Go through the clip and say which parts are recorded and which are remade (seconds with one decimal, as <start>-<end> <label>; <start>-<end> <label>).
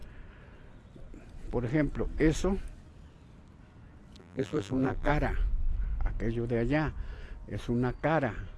0.0-4.2 recorded; 4.2-5.1 remade; 5.1-8.6 recorded